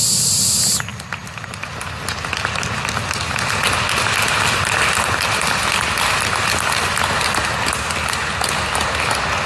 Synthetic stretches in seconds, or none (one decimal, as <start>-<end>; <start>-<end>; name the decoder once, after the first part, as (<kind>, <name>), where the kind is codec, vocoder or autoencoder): none

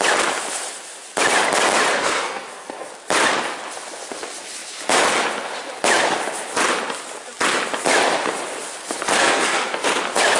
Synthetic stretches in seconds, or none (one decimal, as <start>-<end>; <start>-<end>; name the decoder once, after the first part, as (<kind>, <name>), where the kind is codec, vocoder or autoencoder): 1.9-2.9 (codec, SNAC); 9.2-10.0

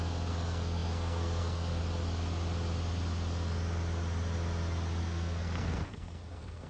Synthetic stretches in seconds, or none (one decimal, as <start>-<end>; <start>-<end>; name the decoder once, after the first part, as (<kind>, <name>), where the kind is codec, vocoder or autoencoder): 0.0-1.8 (codec, SNAC); 5.0-6.7

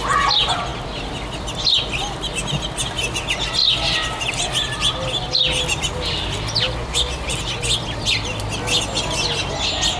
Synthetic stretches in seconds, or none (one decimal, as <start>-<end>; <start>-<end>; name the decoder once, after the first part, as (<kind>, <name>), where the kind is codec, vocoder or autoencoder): none

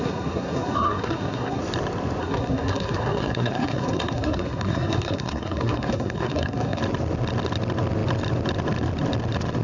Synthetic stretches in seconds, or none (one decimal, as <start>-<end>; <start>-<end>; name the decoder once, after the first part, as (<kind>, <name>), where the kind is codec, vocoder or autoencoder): 0.0-1.6 (codec, SNAC); 2.2-6.8

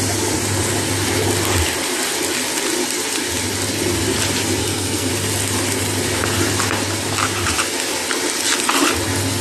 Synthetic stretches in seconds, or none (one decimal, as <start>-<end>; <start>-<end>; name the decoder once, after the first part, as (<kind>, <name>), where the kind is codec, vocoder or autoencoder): 4.6-5.1 (codec, SNAC)

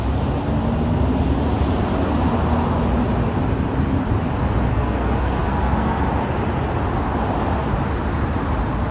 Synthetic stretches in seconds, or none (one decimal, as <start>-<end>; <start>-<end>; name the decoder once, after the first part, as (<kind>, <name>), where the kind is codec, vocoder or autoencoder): 4.7-6.0 (codec, SNAC)